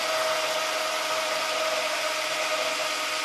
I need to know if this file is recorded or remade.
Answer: recorded